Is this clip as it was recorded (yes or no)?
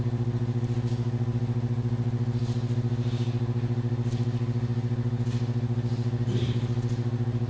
yes